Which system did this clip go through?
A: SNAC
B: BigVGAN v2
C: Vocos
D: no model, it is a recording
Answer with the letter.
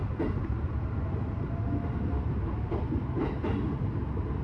D